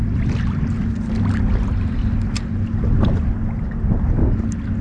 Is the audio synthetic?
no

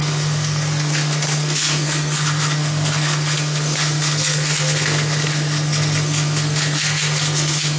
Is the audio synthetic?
yes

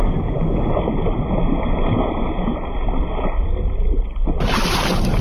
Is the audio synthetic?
no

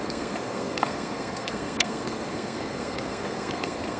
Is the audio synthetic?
yes